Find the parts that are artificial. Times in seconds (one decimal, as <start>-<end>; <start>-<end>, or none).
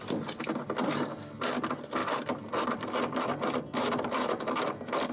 2.0-5.1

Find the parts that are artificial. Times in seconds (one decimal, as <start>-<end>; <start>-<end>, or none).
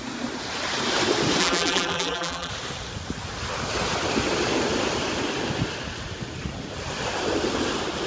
1.4-2.5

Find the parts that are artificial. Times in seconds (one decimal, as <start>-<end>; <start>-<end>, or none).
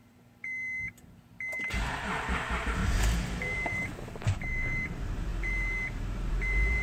0.0-2.8; 3.4-6.8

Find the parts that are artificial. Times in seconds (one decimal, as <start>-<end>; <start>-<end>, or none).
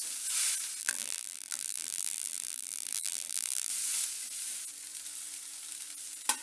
0.8-3.7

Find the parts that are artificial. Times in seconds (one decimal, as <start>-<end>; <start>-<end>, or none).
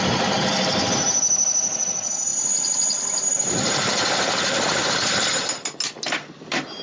2.3-4.8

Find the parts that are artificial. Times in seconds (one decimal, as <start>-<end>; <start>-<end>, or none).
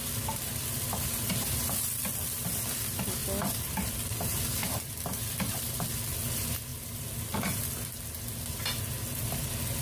3.2-4.1; 4.6-5.3; 6.7-7.7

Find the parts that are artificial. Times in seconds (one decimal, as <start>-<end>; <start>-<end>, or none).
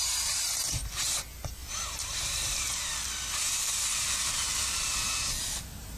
0.0-2.9; 4.3-4.9; 5.4-6.0